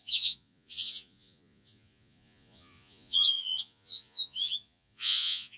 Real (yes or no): no